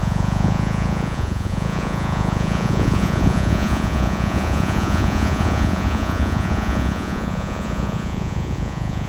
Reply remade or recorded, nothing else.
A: remade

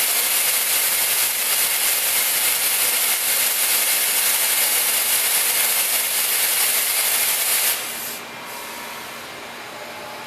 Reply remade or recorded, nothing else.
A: recorded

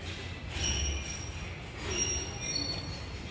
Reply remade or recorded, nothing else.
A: recorded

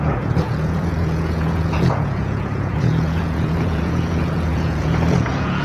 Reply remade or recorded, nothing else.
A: remade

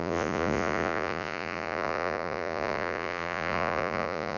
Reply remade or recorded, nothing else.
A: remade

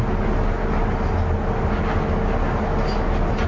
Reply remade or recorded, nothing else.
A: recorded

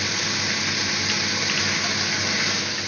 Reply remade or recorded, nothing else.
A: recorded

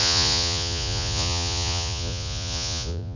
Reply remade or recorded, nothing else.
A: remade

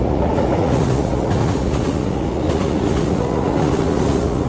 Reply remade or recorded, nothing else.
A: remade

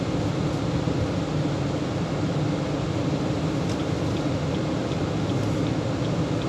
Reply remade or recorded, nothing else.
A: recorded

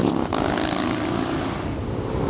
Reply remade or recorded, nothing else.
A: recorded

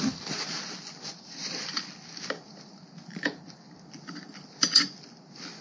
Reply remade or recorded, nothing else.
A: recorded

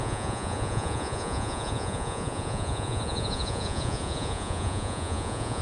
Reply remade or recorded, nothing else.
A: remade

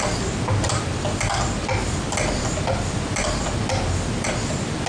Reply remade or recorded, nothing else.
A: recorded